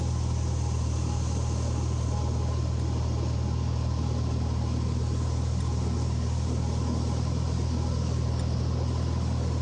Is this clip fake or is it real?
real